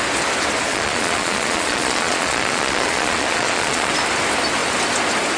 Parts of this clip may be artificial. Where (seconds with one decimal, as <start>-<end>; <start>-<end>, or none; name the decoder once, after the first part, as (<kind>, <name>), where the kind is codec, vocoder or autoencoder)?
0.7-3.9 (vocoder, Vocos)